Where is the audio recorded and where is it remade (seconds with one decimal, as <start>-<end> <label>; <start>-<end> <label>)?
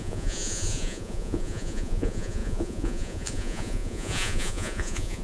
0.0-5.2 remade